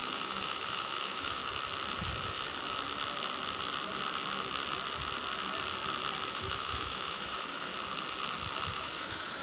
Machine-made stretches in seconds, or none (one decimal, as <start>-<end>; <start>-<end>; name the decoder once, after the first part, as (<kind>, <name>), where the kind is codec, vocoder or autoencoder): 0.0-1.4 (autoencoder, DAC-VAE); 6.3-7.7; 8.7-9.4

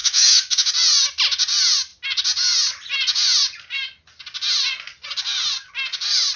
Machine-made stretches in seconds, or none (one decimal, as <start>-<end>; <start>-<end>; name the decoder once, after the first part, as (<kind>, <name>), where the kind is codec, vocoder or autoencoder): 0.0-0.7 (autoencoder, DAC-VAE)

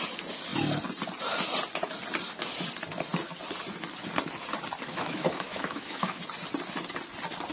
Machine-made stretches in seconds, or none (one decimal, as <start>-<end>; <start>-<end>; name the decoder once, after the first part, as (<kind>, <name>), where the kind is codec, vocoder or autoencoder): 4.9-6.2 (autoencoder, DAC-VAE)